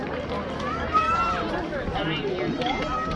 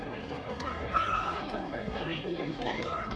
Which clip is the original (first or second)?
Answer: first